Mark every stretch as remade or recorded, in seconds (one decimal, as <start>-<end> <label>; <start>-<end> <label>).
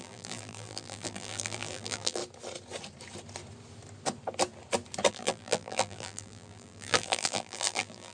0.0-2.2 remade; 2.2-5.1 recorded; 5.1-8.1 remade